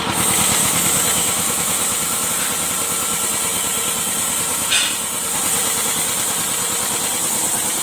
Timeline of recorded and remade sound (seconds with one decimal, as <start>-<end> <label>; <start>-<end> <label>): 0.0-0.6 recorded; 0.6-2.3 remade; 2.3-7.8 recorded